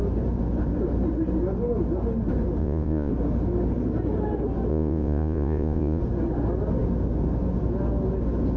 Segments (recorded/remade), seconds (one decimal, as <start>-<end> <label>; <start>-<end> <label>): 0.0-2.6 recorded; 2.6-3.1 remade; 3.1-4.7 recorded; 4.7-6.0 remade; 6.0-8.6 recorded